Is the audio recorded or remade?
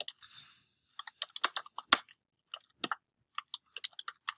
recorded